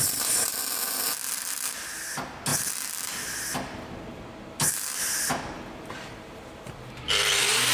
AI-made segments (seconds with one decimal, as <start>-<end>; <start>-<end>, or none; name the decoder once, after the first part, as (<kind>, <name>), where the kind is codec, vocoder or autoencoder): 1.2-1.8 (vocoder, BigVGAN v2)